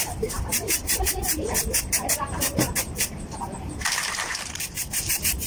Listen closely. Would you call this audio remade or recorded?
remade